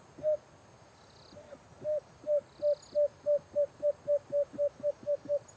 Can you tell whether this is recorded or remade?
recorded